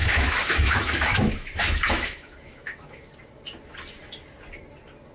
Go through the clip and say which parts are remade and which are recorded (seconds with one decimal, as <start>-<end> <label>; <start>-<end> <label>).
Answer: 0.0-3.1 remade; 3.1-5.1 recorded

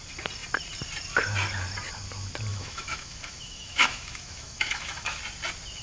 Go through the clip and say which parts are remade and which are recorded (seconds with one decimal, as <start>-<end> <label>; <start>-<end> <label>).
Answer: 0.0-2.5 recorded; 2.5-5.2 remade; 5.2-5.8 recorded

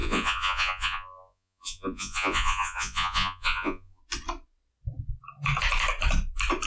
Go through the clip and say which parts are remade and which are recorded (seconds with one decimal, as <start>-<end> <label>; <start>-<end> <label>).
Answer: 0.0-4.0 remade; 4.0-6.7 recorded

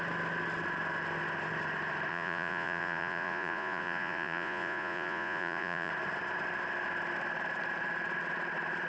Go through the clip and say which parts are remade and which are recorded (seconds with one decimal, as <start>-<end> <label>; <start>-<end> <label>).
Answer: 0.0-2.1 recorded; 2.1-5.9 remade; 5.9-8.9 recorded

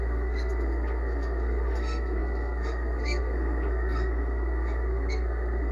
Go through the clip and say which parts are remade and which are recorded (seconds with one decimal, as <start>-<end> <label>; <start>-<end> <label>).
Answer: 0.0-5.7 remade